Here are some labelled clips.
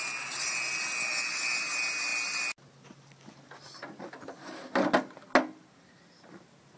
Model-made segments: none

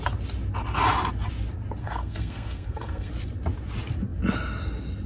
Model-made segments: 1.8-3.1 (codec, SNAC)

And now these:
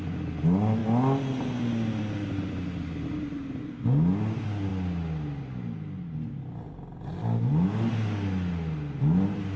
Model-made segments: none